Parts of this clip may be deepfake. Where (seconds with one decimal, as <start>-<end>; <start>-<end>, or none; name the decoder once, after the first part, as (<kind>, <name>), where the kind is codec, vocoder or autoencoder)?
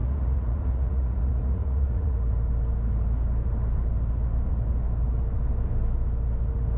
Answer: 0.0-2.2 (vocoder, Vocos)